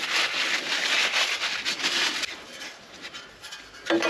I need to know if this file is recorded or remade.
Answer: recorded